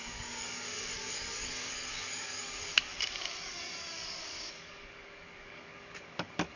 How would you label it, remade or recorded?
remade